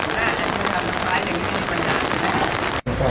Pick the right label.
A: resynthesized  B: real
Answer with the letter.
B